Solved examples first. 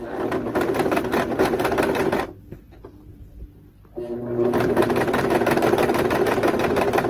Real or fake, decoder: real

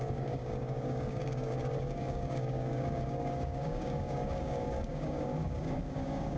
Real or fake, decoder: fake, codec, DAC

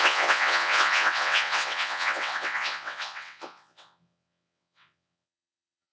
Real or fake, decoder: fake, vocoder, WaveNeXt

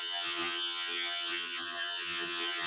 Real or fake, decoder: fake, vocoder, HiFi-GAN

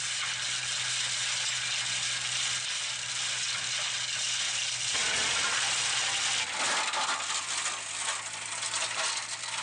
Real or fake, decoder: real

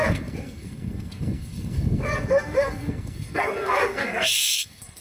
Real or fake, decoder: fake, codec, SNAC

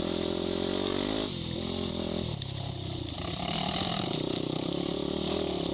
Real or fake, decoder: real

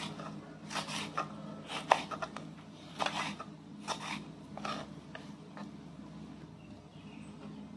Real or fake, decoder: real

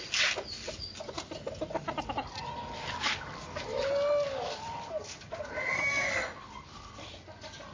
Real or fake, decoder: real